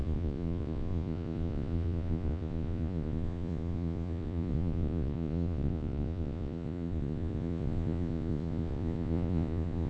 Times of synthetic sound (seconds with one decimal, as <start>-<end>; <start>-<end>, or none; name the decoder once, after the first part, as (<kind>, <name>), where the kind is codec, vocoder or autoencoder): 0.0-9.9 (vocoder, Vocos)